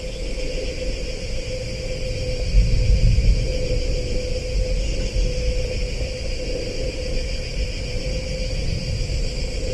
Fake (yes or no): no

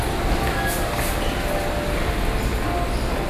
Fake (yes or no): no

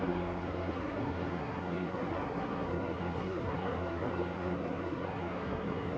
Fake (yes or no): yes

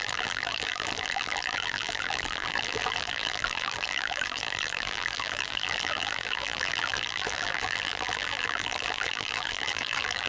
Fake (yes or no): yes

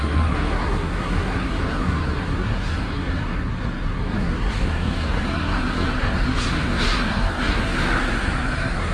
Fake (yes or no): yes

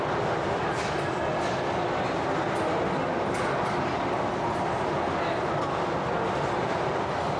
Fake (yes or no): no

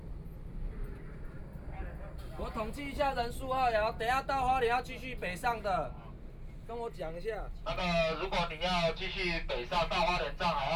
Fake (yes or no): no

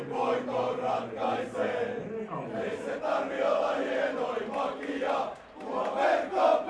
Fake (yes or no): no